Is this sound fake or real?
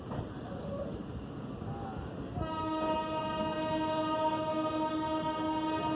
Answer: real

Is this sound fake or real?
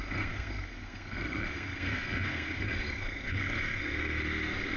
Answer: fake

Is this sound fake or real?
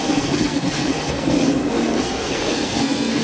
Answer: fake